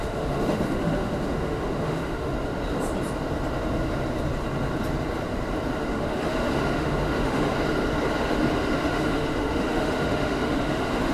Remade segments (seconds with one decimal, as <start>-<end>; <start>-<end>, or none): 0.0-2.3; 5.8-7.5; 8.6-11.1